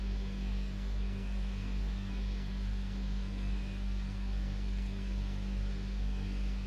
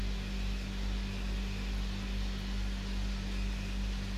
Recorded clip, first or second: second